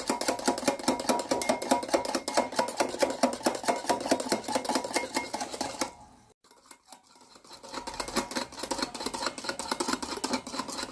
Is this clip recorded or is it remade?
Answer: recorded